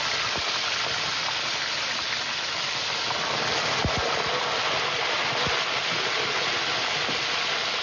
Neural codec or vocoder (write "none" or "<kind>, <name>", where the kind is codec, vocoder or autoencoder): none